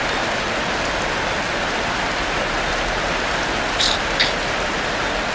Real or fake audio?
real